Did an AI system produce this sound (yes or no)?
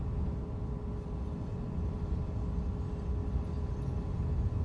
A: no